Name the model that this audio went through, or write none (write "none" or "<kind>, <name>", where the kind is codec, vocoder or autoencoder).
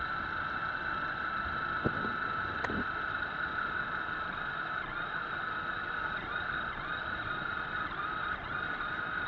none